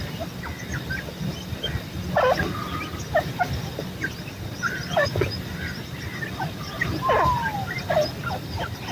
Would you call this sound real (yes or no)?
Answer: yes